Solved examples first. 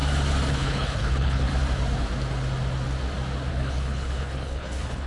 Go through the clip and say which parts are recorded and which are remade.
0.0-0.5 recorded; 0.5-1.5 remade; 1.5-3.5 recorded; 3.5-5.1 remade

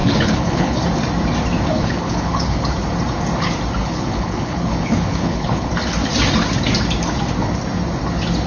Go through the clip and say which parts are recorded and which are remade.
0.0-0.8 remade; 0.8-1.7 recorded; 1.7-2.6 remade; 2.6-3.8 recorded; 3.8-5.7 remade; 5.7-8.5 recorded